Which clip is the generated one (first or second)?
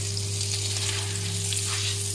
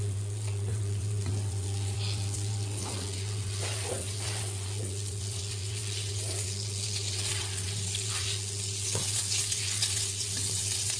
second